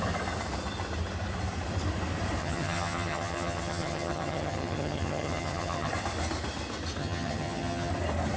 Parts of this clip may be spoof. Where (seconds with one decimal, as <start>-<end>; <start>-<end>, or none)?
2.4-5.9; 7.0-7.9